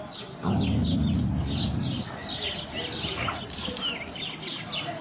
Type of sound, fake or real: real